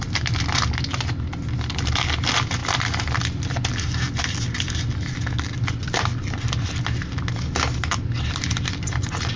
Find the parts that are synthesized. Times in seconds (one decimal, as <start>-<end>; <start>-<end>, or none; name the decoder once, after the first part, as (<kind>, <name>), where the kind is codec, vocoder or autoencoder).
none